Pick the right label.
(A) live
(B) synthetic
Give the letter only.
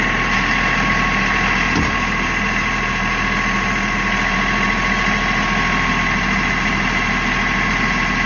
A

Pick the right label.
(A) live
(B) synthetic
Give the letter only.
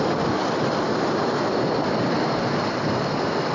A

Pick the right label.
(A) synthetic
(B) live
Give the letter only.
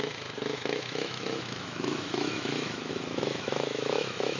A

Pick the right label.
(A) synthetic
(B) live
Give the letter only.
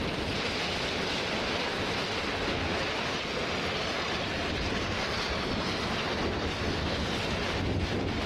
B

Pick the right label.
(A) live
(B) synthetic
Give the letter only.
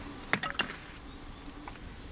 A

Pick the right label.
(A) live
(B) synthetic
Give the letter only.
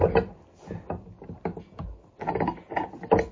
A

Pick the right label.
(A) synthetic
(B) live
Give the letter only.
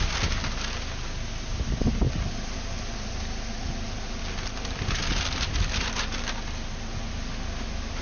B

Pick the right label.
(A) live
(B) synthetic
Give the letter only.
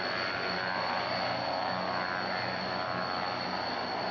A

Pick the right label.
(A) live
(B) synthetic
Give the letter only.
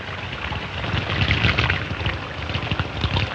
A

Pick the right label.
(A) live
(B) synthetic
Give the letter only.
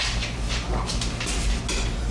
A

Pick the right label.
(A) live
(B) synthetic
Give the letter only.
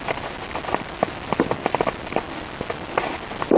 A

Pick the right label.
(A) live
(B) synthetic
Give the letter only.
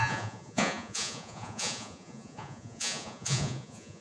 B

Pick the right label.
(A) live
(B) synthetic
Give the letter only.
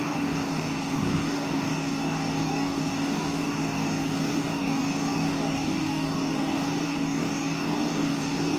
B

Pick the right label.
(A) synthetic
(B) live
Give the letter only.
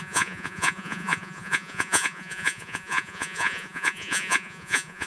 A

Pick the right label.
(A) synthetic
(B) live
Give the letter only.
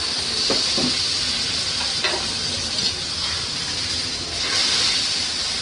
B